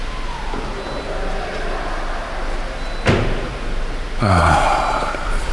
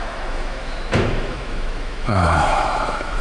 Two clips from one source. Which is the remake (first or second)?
second